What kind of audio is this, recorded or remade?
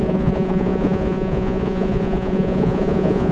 remade